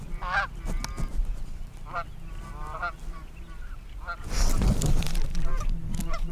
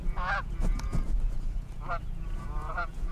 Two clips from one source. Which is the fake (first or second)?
second